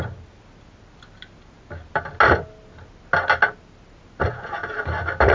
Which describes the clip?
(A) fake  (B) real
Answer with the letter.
B